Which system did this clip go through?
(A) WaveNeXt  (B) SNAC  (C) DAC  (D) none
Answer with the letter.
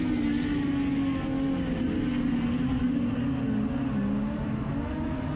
D